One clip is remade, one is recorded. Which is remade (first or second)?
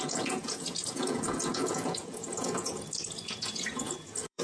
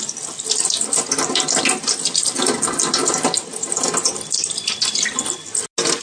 first